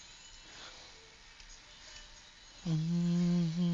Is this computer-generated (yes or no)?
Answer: no